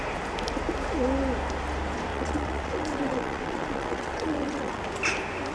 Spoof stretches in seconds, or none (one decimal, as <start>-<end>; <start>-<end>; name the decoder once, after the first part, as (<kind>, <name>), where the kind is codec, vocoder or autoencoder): 2.1-4.8 (vocoder, WaveNeXt)